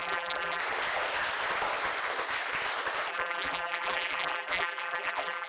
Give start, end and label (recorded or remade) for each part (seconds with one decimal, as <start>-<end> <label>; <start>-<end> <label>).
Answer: 0.0-0.6 remade; 0.6-3.1 recorded; 3.1-5.5 remade